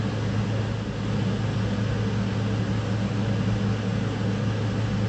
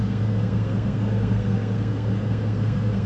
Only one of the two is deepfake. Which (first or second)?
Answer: second